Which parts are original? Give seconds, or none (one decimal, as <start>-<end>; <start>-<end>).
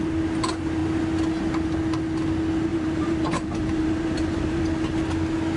0.0-2.7; 4.6-5.6